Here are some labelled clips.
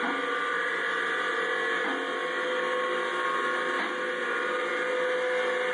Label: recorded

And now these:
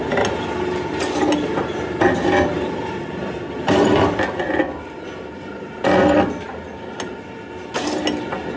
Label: recorded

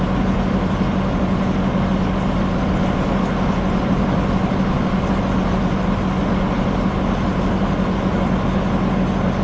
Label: recorded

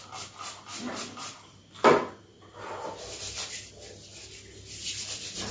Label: recorded